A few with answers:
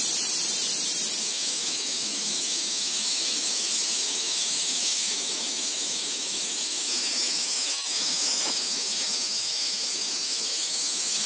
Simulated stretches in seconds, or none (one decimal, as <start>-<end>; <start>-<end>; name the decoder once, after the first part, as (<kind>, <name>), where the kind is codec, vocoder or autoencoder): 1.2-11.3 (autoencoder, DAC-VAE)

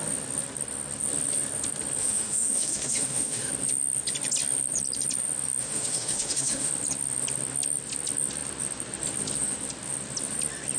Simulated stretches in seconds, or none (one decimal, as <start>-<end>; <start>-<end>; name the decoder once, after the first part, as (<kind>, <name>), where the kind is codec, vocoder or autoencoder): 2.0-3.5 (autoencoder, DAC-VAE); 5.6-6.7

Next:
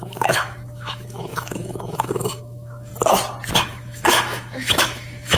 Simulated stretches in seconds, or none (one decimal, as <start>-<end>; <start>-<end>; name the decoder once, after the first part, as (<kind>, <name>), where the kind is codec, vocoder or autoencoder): 0.0-2.9 (autoencoder, DAC-VAE); 3.5-5.4

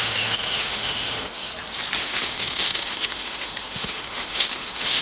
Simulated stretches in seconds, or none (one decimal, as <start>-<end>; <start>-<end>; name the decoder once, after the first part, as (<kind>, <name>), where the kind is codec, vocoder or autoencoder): 0.0-1.5 (autoencoder, DAC-VAE); 2.0-5.0

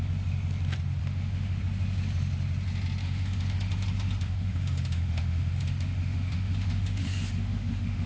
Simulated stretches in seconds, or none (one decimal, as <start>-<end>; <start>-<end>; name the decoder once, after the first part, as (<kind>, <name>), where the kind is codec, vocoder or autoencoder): 1.0-1.6 (autoencoder, DAC-VAE); 3.0-8.1